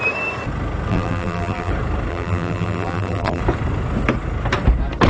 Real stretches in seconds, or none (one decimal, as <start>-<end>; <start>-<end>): 0.0-0.9; 1.7-2.1; 3.4-5.1